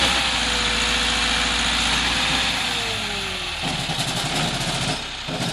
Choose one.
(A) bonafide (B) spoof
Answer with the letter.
A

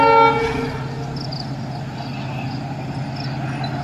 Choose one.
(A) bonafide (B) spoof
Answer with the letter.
A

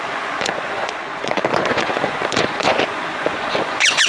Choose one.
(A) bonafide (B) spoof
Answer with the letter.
B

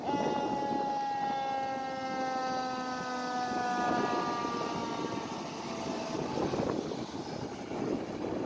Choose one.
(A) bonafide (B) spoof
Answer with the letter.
A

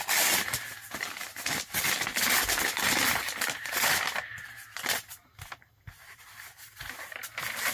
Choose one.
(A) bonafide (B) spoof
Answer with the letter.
A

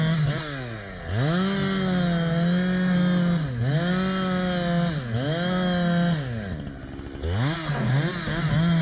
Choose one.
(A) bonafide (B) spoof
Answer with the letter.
A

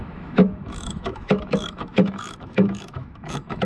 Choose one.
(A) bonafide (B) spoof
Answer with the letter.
B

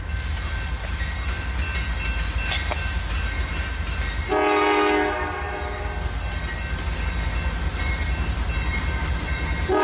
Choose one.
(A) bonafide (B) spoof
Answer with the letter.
A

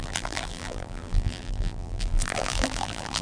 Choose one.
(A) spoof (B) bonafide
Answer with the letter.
A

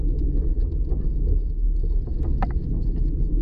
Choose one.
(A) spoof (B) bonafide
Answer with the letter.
B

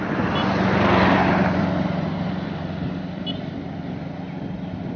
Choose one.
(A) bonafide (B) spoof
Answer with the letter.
A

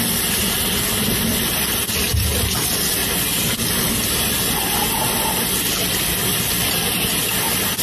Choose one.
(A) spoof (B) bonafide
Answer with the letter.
B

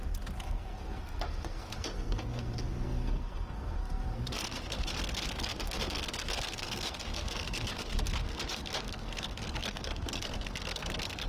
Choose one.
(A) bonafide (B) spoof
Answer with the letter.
B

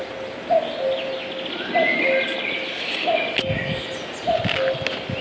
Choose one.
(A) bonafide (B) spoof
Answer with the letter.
A